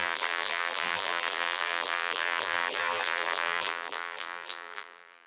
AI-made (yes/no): yes